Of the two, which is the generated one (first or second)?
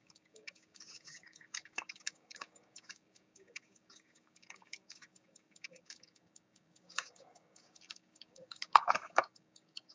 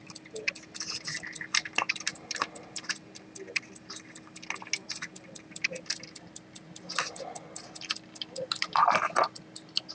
first